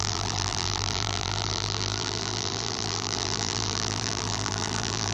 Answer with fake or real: fake